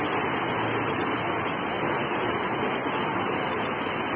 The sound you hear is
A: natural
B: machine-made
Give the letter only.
A